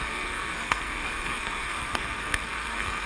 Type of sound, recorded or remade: remade